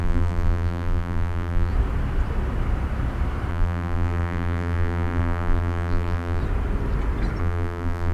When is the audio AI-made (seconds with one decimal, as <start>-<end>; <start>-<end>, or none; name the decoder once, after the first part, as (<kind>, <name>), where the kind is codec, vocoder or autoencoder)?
0.0-1.7 (vocoder, BigVGAN v2); 3.5-6.4; 7.4-8.1

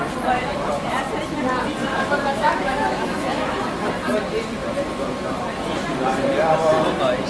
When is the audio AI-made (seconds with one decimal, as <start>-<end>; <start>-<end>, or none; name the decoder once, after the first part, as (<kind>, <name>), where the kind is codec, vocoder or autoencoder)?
1.8-3.9 (autoencoder, DAC-VAE)

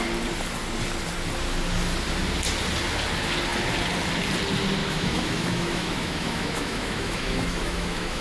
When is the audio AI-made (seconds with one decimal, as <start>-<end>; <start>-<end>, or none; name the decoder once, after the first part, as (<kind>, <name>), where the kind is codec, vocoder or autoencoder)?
4.8-8.2 (autoencoder, DAC-VAE)

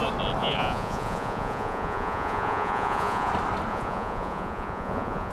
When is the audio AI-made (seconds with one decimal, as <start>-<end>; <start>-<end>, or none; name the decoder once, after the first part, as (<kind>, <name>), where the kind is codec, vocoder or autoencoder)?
0.4-3.3 (vocoder, Vocos); 3.7-5.3

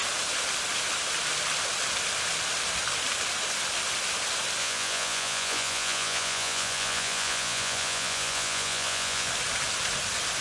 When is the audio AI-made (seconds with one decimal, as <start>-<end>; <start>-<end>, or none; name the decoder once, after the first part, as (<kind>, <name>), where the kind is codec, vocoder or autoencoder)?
4.6-9.3 (vocoder, Vocos)

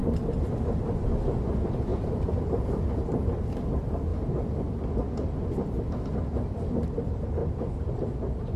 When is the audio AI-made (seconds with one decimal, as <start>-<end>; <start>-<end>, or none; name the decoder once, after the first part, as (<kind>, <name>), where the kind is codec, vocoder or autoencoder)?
none